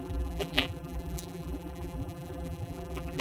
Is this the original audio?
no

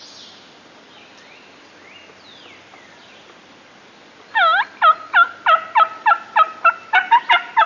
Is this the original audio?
yes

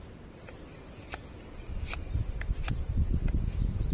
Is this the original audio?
no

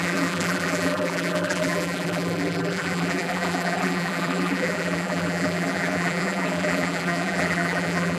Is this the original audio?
no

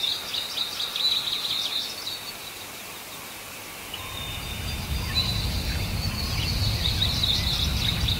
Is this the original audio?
yes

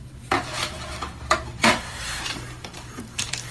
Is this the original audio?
no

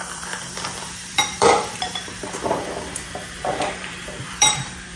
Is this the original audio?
no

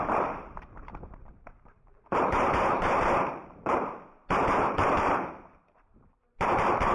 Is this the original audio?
no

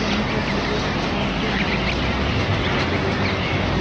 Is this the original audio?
yes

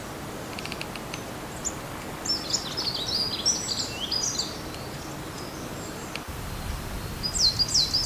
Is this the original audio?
yes